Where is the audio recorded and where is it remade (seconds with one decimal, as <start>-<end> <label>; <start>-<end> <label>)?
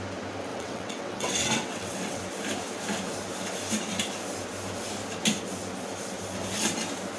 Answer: 0.0-0.5 recorded; 0.5-2.2 remade; 2.2-7.2 recorded